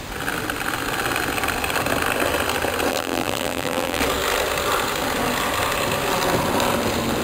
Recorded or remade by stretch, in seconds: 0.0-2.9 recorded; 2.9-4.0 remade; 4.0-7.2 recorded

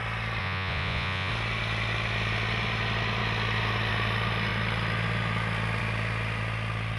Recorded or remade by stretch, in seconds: 0.0-0.4 recorded; 0.4-1.3 remade; 1.3-7.0 recorded

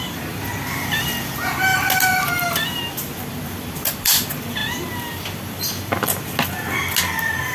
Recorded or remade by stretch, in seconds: 0.0-7.5 recorded

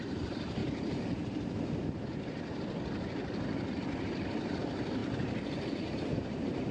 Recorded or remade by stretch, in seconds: 0.0-0.6 remade; 0.6-4.6 recorded; 4.6-5.0 remade; 5.0-5.9 recorded; 5.9-6.7 remade